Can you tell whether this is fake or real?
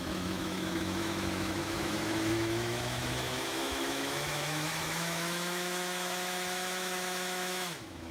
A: fake